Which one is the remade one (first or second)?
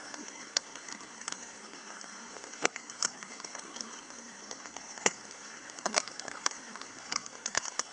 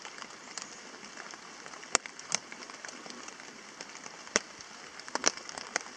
first